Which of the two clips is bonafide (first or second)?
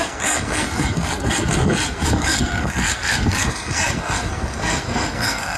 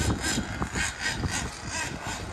second